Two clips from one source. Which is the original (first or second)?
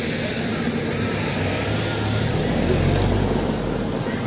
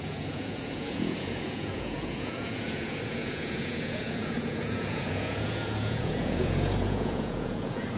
first